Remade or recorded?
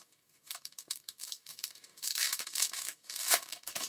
remade